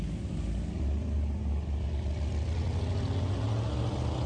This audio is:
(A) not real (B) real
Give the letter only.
B